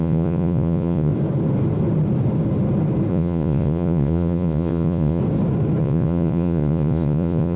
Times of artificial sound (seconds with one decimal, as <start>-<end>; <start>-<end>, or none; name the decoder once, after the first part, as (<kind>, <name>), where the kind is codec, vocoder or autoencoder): 0.0-1.1 (vocoder, Vocos); 3.1-5.2; 5.8-7.6